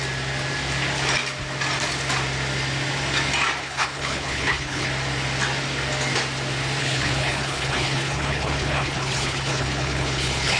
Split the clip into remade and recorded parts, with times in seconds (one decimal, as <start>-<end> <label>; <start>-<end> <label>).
0.0-3.6 recorded; 3.6-4.9 remade; 4.9-6.8 recorded; 6.8-10.6 remade